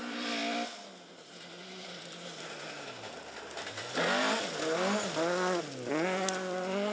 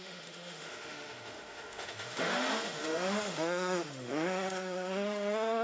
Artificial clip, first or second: second